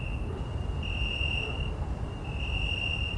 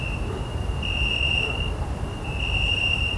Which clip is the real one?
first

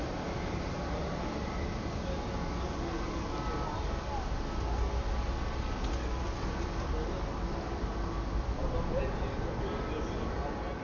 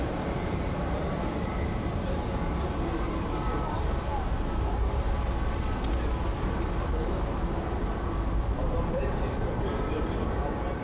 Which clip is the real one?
first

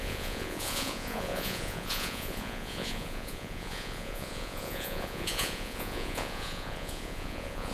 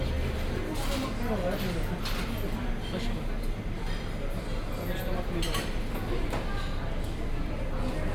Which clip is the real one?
second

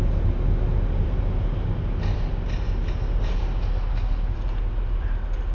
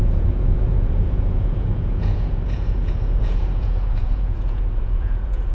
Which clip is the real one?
first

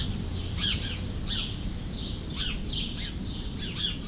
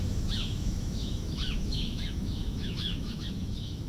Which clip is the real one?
first